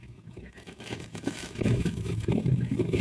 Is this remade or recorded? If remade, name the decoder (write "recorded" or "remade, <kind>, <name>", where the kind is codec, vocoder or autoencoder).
remade, autoencoder, DAC-VAE